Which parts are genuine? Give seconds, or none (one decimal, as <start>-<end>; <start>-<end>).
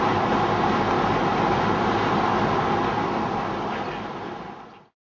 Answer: 0.0-5.1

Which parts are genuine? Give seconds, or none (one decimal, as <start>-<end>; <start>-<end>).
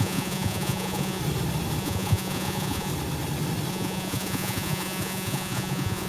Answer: 1.2-1.8; 2.9-3.7